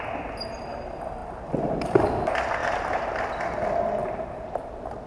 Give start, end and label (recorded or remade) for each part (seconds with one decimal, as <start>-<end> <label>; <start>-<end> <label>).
0.0-1.2 recorded; 1.2-1.8 remade; 1.8-2.6 recorded; 2.6-3.4 remade; 3.4-4.0 recorded; 4.0-5.1 remade